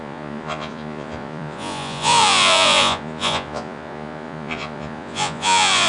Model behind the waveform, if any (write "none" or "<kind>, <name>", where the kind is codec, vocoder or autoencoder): vocoder, Vocos